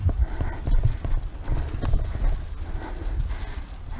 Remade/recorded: recorded